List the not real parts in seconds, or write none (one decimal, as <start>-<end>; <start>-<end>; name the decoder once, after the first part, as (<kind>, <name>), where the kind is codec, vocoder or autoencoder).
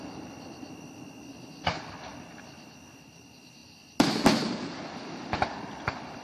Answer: none